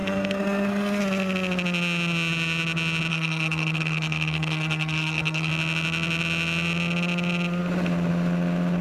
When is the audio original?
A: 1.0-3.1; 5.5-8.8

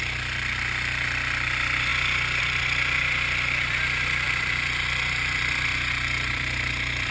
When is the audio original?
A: 1.9-2.4; 5.7-6.3

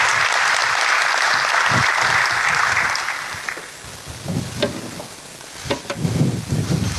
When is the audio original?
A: 0.0-7.0

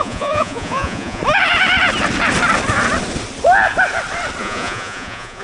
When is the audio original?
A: 1.2-4.4